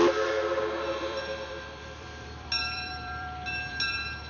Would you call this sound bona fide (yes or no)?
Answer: no